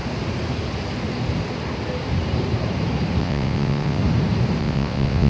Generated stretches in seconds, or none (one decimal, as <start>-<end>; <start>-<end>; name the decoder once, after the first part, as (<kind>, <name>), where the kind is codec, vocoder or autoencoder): 3.2-4.0 (vocoder, WaveNeXt); 4.6-5.3